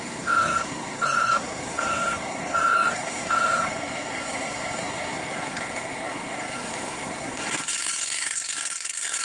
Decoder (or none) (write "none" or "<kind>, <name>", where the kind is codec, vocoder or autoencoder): codec, SNAC